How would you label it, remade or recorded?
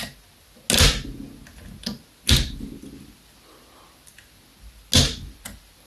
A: recorded